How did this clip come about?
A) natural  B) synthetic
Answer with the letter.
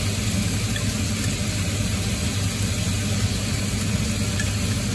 A